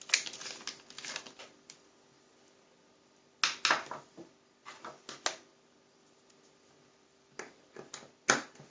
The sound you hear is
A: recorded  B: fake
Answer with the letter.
A